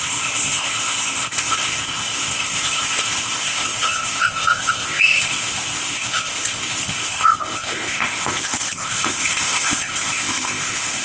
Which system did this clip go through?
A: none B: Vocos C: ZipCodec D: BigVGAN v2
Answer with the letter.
C